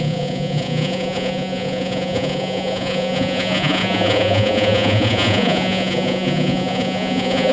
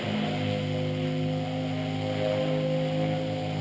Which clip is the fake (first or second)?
first